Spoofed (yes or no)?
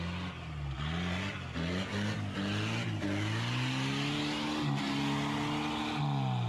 no